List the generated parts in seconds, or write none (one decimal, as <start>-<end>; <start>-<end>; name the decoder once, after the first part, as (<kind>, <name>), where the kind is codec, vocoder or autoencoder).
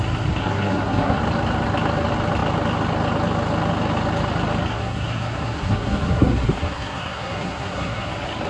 0.4-1.2 (codec, SNAC); 4.7-8.1